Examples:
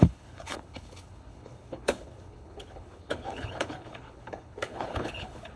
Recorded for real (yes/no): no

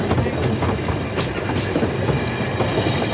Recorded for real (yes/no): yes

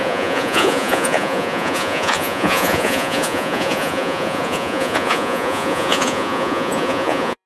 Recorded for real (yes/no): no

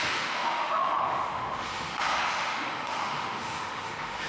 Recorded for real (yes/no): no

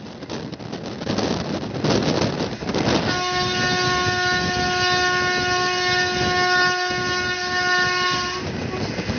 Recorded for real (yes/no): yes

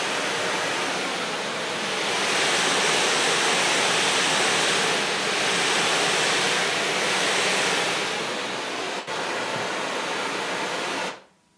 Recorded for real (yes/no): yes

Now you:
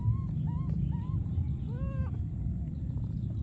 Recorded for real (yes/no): yes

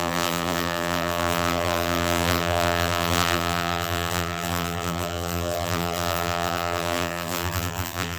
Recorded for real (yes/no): no